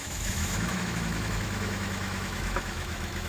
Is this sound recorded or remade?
remade